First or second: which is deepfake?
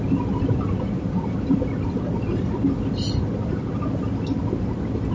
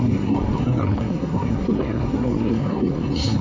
second